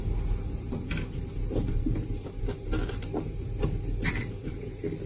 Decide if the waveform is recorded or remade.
remade